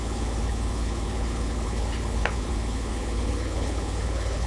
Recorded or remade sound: remade